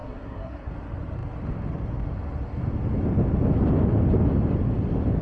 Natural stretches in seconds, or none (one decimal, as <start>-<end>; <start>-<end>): 0.7-5.2